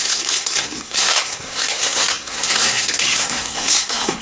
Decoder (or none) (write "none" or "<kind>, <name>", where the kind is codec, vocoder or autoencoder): codec, SNAC